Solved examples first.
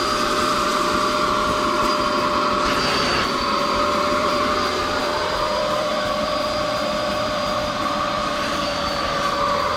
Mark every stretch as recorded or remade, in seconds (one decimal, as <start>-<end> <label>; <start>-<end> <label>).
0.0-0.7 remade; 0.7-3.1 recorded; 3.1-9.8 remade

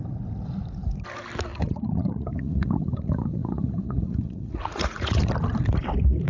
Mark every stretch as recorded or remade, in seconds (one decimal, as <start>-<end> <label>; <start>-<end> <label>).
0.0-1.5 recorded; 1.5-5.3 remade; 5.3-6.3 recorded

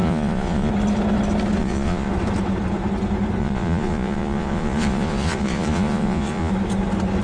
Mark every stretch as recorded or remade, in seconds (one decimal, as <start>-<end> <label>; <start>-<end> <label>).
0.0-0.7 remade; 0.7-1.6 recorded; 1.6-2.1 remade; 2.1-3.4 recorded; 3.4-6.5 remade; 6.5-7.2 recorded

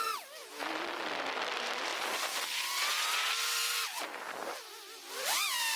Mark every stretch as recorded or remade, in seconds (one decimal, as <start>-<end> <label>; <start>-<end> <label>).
0.0-1.9 recorded; 1.9-5.8 remade

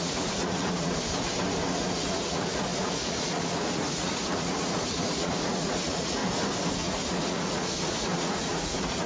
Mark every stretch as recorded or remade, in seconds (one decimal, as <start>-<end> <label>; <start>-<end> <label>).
0.0-1.0 remade; 1.0-1.7 recorded; 1.7-6.2 remade; 6.2-6.7 recorded; 6.7-9.1 remade

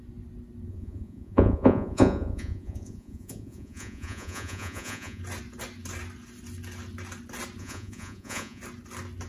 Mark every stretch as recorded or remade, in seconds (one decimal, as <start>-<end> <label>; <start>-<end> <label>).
0.0-0.7 recorded; 0.7-5.2 remade; 5.2-7.6 recorded; 7.6-8.6 remade; 8.6-9.3 recorded

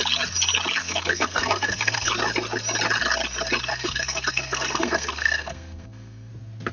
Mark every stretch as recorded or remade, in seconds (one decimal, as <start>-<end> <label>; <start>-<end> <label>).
0.0-0.8 recorded; 0.8-2.1 remade; 2.1-3.7 recorded; 3.7-6.3 remade; 6.3-6.7 recorded